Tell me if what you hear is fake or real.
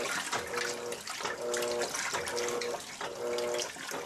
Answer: real